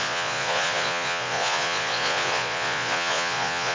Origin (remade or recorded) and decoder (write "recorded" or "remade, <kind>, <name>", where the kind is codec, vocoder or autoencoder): remade, vocoder, Vocos